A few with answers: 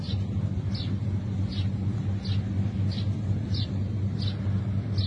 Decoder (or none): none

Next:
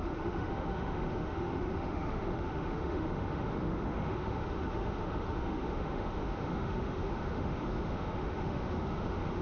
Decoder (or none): autoencoder, DAC-VAE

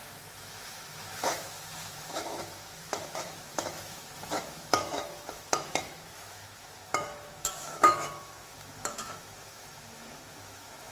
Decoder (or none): autoencoder, DAC-VAE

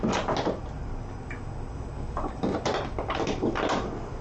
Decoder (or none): none